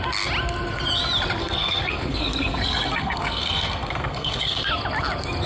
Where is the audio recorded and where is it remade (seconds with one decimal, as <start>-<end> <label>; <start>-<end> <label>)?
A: 0.0-1.4 recorded; 1.4-4.7 remade; 4.7-5.5 recorded